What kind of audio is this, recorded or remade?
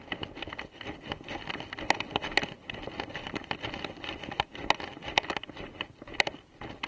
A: recorded